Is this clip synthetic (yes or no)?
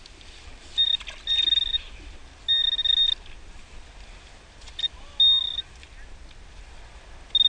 no